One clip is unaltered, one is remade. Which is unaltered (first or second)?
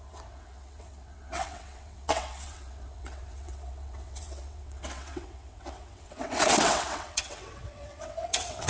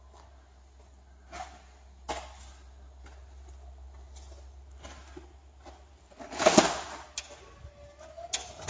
second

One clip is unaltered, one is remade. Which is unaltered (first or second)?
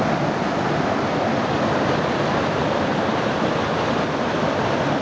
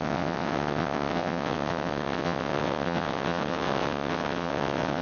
first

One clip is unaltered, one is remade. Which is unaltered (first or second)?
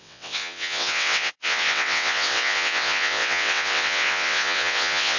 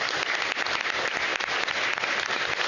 second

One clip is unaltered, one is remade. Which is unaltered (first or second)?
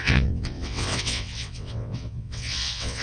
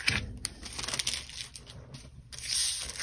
second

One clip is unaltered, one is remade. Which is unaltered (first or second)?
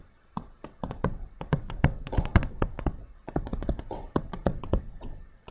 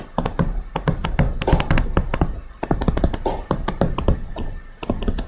second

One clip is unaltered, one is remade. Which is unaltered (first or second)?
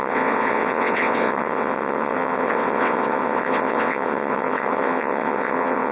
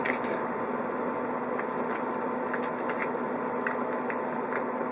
second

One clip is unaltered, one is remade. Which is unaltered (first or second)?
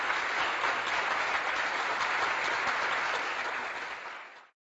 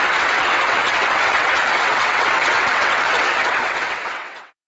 first